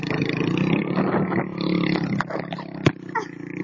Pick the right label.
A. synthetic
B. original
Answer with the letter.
B